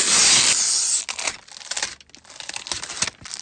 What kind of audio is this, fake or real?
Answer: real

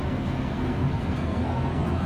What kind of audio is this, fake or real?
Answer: fake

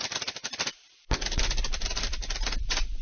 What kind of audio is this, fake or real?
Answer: fake